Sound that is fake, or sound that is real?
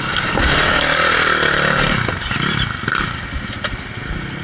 real